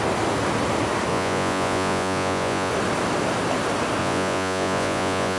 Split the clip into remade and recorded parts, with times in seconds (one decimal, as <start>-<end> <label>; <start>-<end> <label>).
0.0-1.1 recorded; 1.1-2.7 remade; 2.7-4.0 recorded; 4.0-5.4 remade